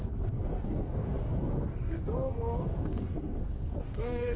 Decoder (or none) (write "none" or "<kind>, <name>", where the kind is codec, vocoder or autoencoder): codec, SNAC